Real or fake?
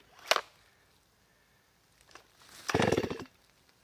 real